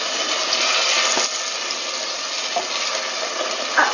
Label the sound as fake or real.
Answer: real